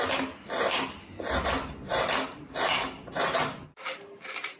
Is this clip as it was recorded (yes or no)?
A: yes